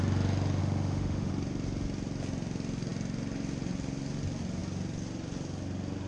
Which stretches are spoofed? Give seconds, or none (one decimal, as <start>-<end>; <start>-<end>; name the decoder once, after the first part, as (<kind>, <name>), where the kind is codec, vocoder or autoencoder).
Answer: 0.6-1.3 (autoencoder, DAC-VAE)